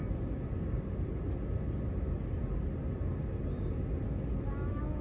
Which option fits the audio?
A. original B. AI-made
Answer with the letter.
A